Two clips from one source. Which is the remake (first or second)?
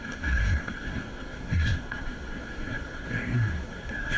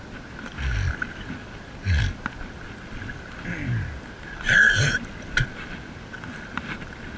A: first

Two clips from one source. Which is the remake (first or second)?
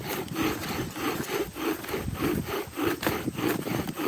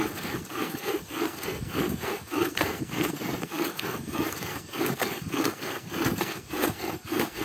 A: second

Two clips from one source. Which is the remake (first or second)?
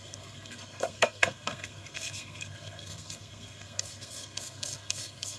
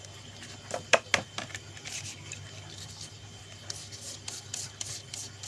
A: first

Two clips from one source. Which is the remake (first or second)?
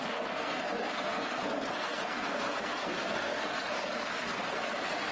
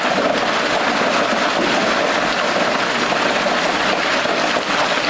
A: first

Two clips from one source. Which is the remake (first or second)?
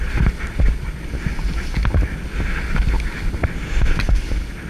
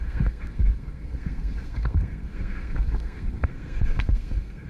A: second